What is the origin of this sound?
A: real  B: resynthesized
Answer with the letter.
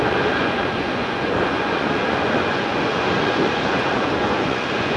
B